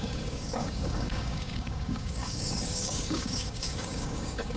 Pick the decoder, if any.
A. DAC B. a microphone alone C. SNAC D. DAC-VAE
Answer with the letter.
A